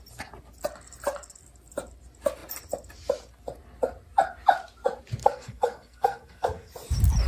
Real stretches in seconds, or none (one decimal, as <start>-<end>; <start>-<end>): 0.0-5.2; 6.7-7.3